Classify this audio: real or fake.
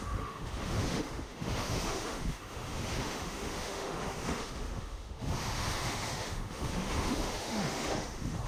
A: fake